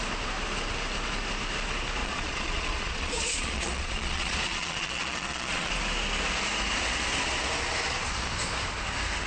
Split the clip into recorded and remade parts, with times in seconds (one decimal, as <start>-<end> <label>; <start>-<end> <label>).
0.0-2.0 recorded; 2.0-5.7 remade; 5.7-9.3 recorded

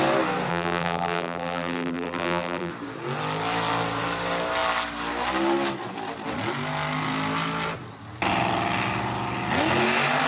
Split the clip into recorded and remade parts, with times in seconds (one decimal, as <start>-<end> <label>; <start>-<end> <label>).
0.0-0.5 recorded; 0.5-2.7 remade; 2.7-10.3 recorded

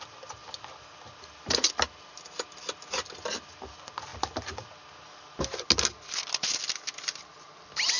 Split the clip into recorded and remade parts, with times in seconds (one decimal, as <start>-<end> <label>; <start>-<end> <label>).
0.0-0.4 recorded; 0.4-1.7 remade; 1.7-8.0 recorded

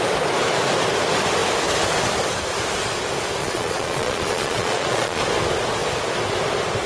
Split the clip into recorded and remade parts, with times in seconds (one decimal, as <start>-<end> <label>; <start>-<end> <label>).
0.0-3.4 recorded; 3.4-5.2 remade; 5.2-6.9 recorded

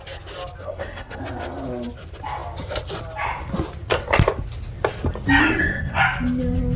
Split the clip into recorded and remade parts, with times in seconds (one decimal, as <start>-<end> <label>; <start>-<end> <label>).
0.0-0.6 recorded; 0.6-1.2 remade; 1.2-5.4 recorded; 5.4-6.0 remade; 6.0-6.8 recorded

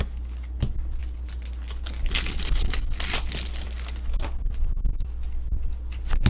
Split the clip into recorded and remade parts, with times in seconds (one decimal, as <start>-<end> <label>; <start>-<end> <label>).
0.0-6.3 recorded

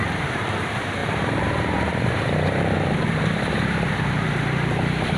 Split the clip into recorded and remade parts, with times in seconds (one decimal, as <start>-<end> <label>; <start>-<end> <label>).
0.0-5.2 remade

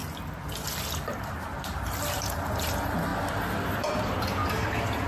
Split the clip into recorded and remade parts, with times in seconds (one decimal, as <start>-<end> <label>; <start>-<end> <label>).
0.0-2.1 recorded; 2.1-3.1 remade; 3.1-3.8 recorded; 3.8-4.4 remade; 4.4-5.1 recorded